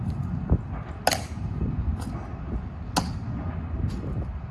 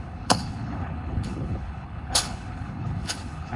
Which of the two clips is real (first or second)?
first